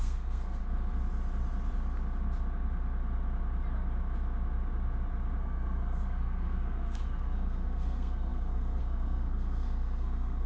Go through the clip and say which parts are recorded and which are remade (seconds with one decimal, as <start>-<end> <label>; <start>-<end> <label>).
0.0-0.6 remade; 0.6-5.4 recorded; 5.4-10.5 remade